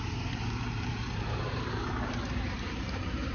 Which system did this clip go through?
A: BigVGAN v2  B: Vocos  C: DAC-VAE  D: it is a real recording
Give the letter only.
A